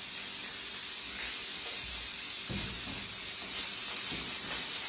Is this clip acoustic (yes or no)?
yes